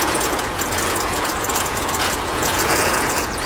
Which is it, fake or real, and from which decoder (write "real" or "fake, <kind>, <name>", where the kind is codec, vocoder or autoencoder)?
fake, vocoder, Vocos